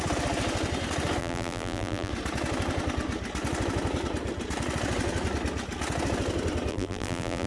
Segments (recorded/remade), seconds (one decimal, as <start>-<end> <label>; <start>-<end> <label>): 0.0-1.2 recorded; 1.2-2.1 remade; 2.1-6.7 recorded; 6.7-7.5 remade